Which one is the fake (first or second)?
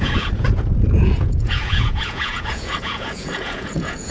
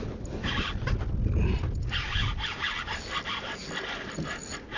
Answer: first